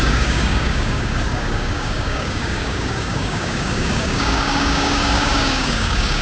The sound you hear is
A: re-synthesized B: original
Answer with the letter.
A